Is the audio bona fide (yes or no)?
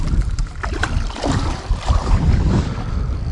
no